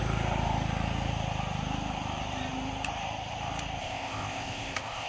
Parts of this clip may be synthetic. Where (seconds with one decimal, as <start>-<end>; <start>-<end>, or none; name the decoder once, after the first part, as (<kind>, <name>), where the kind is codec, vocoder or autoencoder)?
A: 3.8-5.1 (codec, ZipCodec)